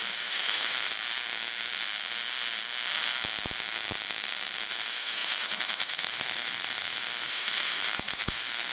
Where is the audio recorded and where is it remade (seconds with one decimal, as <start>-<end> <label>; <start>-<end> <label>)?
0.0-0.9 remade; 0.9-4.7 recorded; 4.7-8.7 remade